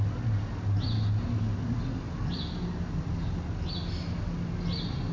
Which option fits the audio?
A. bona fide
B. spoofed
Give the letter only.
A